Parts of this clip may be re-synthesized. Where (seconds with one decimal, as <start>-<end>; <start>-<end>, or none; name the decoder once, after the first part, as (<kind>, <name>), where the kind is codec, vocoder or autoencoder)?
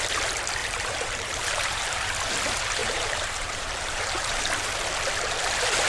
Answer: 0.6-2.0 (vocoder, BigVGAN v2); 2.8-4.4